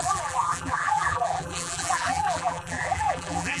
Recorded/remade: remade